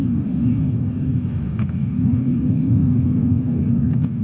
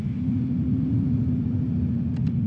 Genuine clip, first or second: second